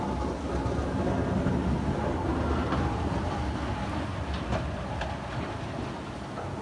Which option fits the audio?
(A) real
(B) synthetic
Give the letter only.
A